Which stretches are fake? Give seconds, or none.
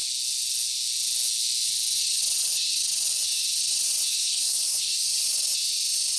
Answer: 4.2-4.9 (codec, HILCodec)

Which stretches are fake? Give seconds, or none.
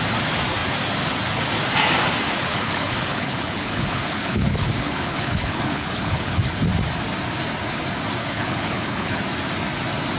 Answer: 2.5-6.6 (codec, HILCodec); 8.2-9.2